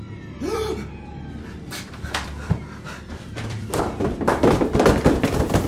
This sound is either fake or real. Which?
fake